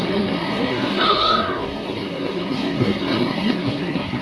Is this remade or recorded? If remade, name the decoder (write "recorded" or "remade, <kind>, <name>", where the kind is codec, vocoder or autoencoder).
remade, codec, SNAC